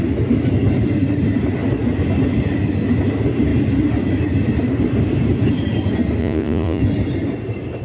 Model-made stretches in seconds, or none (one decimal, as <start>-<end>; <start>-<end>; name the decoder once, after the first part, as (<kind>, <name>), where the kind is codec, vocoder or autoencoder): 6.2-6.8 (vocoder, Vocos)